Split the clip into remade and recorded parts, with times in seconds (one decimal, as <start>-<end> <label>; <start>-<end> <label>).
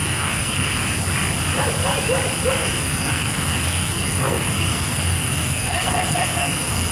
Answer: 0.0-0.8 remade; 0.8-2.6 recorded; 2.6-6.9 remade